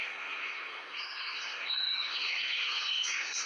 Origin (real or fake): fake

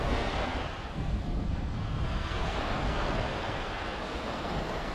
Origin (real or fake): fake